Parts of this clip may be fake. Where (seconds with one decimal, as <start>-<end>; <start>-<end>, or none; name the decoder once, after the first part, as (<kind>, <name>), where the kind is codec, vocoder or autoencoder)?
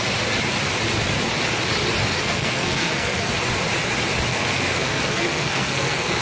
2.2-3.3 (codec, SNAC); 4.3-6.2